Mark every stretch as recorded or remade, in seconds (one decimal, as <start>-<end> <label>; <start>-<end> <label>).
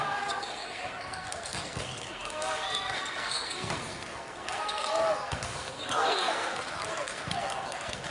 0.0-8.1 remade